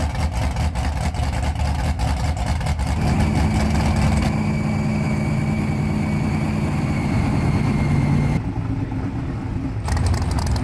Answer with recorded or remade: recorded